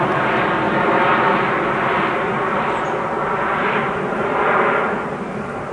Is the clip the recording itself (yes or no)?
yes